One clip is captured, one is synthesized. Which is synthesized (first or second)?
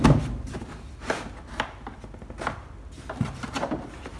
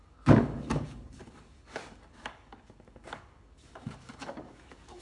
second